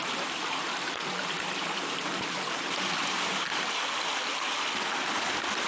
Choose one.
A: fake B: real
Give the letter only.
B